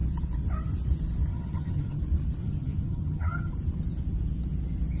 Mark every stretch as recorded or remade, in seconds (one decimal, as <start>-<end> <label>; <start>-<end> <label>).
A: 0.0-1.3 recorded; 1.3-2.0 remade; 2.0-2.4 recorded; 2.4-3.5 remade; 3.5-5.0 recorded